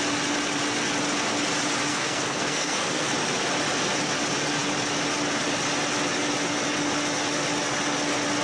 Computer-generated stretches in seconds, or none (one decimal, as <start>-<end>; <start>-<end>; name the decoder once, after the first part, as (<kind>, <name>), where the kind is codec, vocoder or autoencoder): 1.9-3.1 (codec, SNAC)